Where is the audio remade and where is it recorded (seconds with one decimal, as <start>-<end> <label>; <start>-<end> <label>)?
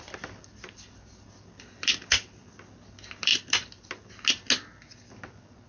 0.0-5.7 recorded